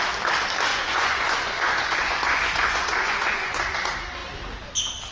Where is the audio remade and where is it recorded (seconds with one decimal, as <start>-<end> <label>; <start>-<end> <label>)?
0.0-0.7 recorded; 0.7-3.8 remade; 3.8-5.1 recorded